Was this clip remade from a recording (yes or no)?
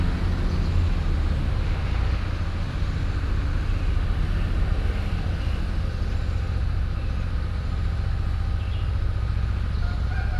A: no